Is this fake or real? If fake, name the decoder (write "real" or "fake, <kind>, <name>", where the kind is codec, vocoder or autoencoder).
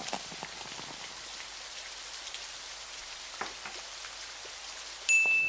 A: real